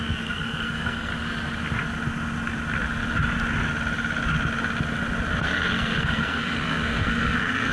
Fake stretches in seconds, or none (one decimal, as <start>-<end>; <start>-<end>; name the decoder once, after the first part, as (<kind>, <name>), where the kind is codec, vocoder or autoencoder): 0.0-1.1 (codec, SNAC); 5.4-7.7